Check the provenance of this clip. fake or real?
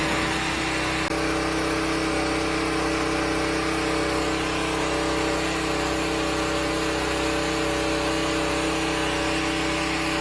real